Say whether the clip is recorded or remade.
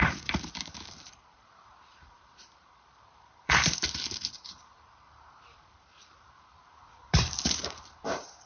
remade